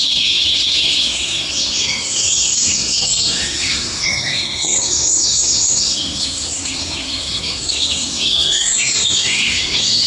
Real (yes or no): no